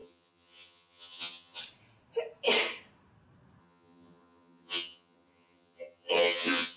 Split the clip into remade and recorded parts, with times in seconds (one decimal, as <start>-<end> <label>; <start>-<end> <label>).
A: 0.0-1.6 remade; 1.6-3.6 recorded; 3.6-6.8 remade